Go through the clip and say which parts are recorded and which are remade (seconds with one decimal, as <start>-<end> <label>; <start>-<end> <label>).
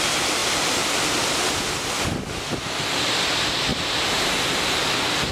0.0-5.3 recorded